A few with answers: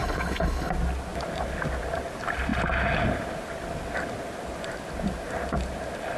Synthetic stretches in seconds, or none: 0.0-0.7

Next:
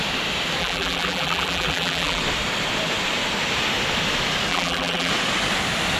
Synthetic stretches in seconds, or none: 0.6-2.2; 4.5-5.1

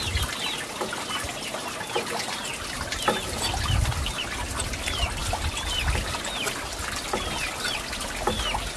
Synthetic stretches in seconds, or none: none

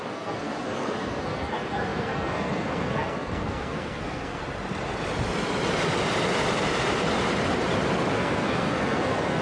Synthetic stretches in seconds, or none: 0.0-4.4; 8.1-9.4

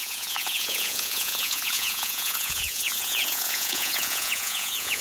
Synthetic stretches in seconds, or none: 0.0-5.0